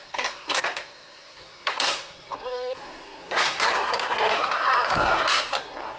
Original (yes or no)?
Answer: no